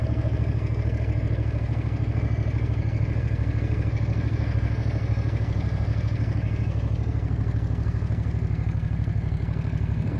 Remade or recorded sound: remade